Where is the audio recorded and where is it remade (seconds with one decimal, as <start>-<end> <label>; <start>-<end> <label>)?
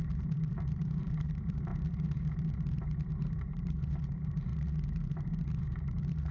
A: 0.0-1.7 remade; 1.7-3.1 recorded; 3.1-4.5 remade; 4.5-5.6 recorded; 5.6-6.3 remade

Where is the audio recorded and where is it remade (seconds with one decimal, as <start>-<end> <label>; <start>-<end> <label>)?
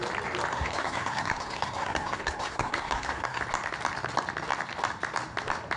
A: 0.0-0.5 recorded; 0.5-3.4 remade; 3.4-5.8 recorded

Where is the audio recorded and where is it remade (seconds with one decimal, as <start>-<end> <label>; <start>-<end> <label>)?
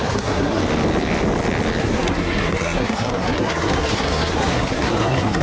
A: 0.0-0.6 remade; 0.6-1.8 recorded; 1.8-5.4 remade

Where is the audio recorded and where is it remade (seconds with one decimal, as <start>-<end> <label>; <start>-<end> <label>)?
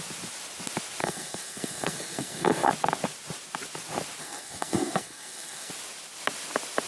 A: 0.0-1.0 recorded; 1.0-2.7 remade; 2.7-4.2 recorded; 4.2-5.7 remade; 5.7-6.9 recorded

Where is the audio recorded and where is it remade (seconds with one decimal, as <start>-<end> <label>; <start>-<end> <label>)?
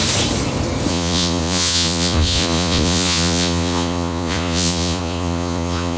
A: 0.0-0.9 recorded; 0.9-6.0 remade